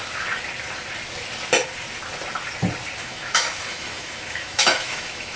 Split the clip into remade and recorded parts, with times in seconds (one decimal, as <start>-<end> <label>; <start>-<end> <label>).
0.0-3.0 recorded; 3.0-5.4 remade

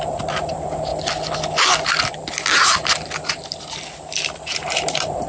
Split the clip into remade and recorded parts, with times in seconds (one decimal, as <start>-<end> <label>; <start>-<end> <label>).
0.0-0.9 remade; 0.9-4.1 recorded; 4.1-5.3 remade

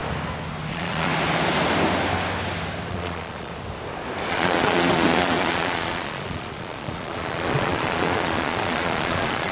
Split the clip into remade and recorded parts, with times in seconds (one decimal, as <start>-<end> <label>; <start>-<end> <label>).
0.0-0.7 recorded; 0.7-1.1 remade; 1.1-2.9 recorded; 2.9-3.5 remade; 3.5-4.3 recorded; 4.3-9.5 remade

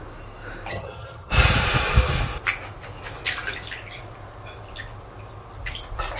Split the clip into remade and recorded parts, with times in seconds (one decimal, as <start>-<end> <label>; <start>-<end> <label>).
0.0-0.7 recorded; 0.7-1.3 remade; 1.3-6.2 recorded

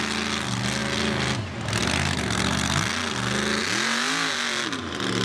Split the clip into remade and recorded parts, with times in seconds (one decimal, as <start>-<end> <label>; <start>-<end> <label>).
0.0-5.2 recorded

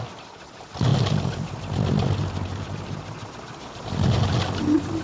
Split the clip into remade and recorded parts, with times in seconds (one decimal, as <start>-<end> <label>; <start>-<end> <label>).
0.0-5.0 recorded

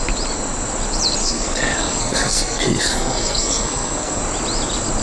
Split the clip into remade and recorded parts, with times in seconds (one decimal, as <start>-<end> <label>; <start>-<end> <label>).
0.0-1.2 recorded; 1.2-4.2 remade; 4.2-5.0 recorded

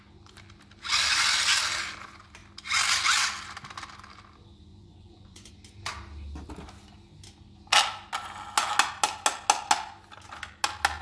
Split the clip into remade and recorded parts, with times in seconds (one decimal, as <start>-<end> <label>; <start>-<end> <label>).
0.0-4.7 recorded; 4.7-5.5 remade; 5.5-11.0 recorded